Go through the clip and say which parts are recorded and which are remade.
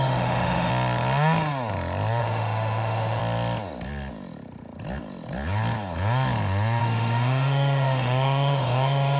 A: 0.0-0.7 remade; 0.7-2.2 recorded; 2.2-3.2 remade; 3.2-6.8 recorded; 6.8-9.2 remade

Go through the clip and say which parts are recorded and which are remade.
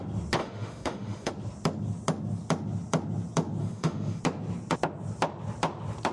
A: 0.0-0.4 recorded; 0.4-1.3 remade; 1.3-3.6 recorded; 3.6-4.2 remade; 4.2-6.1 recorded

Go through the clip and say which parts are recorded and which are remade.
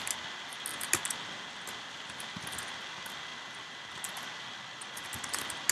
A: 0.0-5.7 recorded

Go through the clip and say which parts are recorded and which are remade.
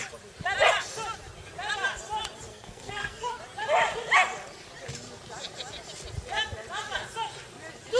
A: 0.0-2.5 recorded; 2.5-3.4 remade; 3.4-8.0 recorded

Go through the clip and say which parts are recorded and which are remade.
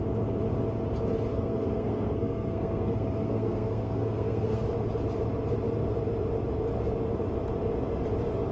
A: 0.0-1.3 recorded; 1.3-4.6 remade; 4.6-8.5 recorded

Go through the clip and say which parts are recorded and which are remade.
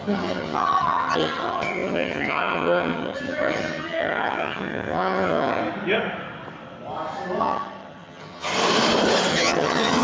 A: 0.0-5.6 remade; 5.6-7.4 recorded; 7.4-8.5 remade; 8.5-9.3 recorded; 9.3-10.0 remade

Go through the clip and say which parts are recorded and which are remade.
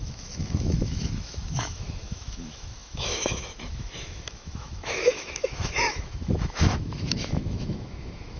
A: 0.0-8.4 remade